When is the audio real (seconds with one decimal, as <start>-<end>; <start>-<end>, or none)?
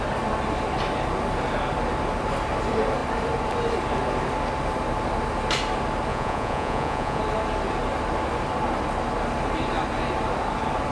0.0-6.1; 7.2-10.9